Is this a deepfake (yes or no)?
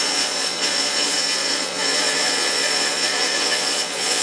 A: yes